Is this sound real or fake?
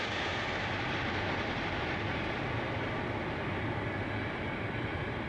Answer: real